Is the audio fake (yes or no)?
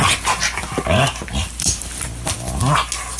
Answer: no